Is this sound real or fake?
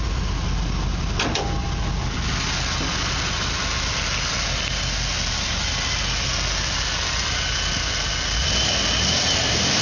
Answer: real